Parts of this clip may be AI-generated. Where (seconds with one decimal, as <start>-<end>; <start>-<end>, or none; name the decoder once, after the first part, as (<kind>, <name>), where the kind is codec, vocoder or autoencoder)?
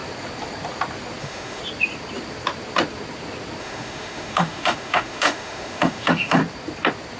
1.2-1.6 (autoencoder, DAC-VAE); 3.6-6.4